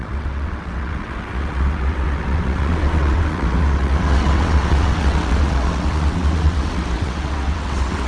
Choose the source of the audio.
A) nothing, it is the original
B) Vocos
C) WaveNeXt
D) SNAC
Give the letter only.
C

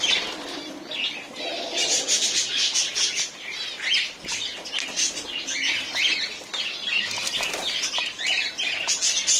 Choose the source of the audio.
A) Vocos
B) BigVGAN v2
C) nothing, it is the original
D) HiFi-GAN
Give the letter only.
C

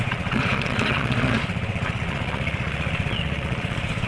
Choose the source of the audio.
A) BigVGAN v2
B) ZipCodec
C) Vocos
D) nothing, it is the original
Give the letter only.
C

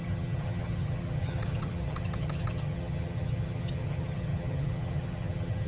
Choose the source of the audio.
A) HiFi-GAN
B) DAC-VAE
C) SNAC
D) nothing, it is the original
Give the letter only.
A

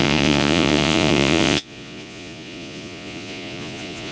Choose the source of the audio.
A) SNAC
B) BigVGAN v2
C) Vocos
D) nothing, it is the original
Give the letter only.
C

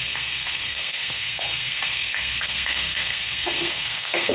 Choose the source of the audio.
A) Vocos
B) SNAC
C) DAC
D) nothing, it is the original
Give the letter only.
B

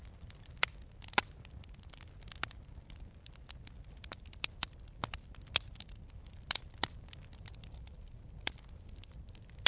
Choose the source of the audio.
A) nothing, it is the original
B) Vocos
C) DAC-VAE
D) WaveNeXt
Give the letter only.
A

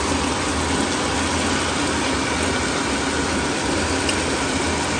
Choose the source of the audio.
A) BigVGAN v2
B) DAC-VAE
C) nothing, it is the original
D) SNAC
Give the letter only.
C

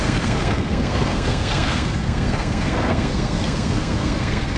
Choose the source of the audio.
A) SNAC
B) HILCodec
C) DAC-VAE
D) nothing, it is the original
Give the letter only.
A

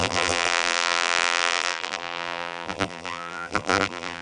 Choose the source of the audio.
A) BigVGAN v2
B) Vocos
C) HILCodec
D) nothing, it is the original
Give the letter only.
A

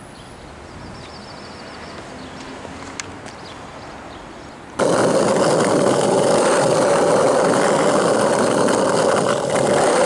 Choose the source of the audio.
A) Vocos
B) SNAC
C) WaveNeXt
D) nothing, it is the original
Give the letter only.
D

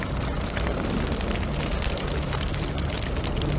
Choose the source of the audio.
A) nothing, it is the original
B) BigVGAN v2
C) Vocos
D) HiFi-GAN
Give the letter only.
A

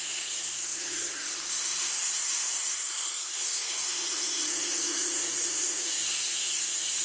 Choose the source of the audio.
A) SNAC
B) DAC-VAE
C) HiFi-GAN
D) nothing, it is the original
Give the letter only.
A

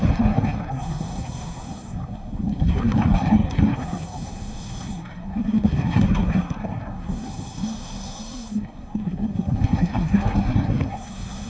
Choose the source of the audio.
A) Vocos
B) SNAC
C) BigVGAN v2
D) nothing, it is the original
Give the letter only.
B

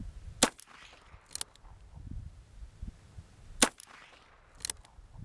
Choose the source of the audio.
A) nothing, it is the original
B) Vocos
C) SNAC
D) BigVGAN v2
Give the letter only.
A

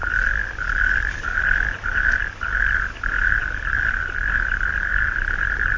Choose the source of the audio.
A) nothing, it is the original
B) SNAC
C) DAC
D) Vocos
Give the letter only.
A